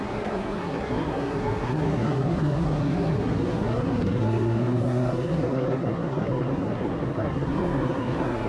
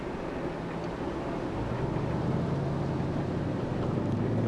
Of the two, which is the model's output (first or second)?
first